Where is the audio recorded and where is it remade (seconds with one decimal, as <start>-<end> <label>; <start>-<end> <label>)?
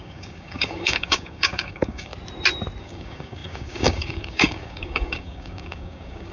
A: 0.0-2.1 remade; 2.1-2.8 recorded; 2.8-6.3 remade